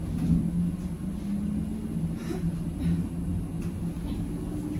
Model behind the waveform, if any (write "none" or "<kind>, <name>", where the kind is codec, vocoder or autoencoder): none